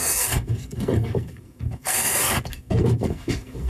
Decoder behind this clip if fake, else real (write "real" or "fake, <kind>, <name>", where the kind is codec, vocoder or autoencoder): fake, codec, SNAC